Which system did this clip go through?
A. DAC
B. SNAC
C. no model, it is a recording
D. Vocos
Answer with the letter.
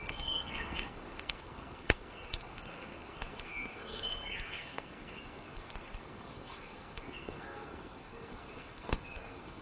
B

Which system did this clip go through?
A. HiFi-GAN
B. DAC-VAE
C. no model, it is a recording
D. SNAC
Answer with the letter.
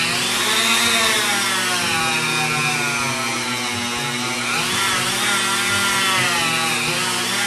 C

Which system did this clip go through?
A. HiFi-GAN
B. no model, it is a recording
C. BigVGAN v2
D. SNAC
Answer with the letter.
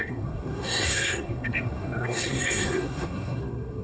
D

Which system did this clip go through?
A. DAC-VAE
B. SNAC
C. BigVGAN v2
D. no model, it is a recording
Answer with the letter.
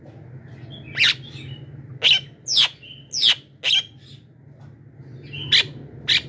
D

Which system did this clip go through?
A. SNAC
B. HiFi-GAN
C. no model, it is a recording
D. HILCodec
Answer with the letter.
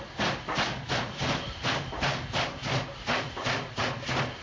C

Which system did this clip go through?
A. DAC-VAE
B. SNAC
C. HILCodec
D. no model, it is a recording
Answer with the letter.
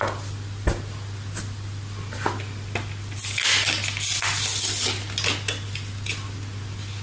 D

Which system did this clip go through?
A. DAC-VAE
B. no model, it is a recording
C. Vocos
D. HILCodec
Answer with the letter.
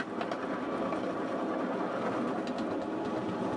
B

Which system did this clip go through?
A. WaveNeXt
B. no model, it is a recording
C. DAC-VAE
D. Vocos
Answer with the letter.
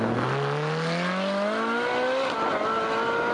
B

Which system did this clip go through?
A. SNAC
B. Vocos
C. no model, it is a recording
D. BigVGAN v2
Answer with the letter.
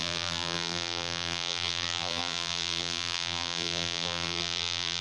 D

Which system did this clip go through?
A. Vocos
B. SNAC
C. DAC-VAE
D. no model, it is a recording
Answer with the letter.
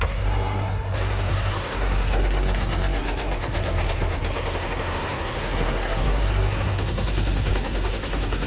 B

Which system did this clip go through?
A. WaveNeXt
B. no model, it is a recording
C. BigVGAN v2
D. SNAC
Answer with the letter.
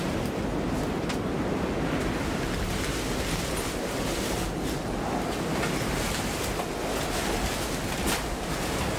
B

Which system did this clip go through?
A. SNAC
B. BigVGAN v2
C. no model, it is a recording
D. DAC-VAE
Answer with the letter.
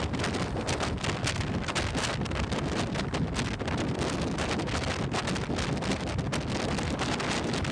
C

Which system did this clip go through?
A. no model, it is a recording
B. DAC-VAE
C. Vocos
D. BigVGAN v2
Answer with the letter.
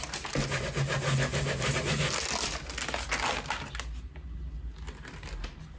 A